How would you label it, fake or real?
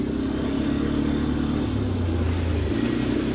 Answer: real